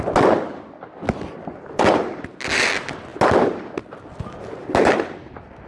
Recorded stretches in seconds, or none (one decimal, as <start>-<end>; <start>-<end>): 0.0-5.7